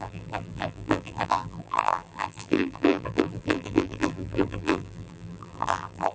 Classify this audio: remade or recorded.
remade